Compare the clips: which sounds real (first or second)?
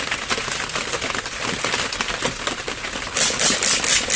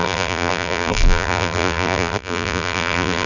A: first